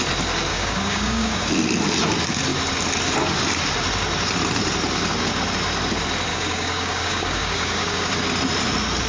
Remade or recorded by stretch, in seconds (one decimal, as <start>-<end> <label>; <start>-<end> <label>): 0.0-0.5 recorded; 0.5-1.5 remade; 1.5-6.3 recorded; 6.3-8.1 remade; 8.1-9.1 recorded